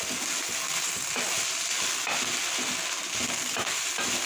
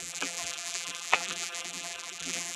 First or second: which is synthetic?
second